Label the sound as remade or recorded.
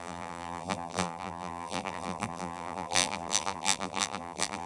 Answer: remade